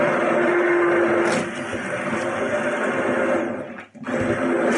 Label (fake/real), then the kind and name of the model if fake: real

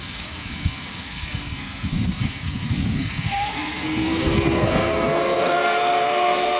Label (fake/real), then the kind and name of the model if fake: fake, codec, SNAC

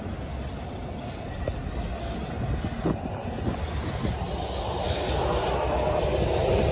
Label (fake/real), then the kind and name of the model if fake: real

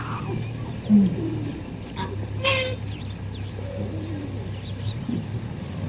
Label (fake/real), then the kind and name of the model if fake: real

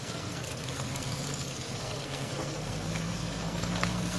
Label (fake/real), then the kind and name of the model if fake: fake, codec, SNAC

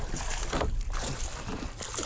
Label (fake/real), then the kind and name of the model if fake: real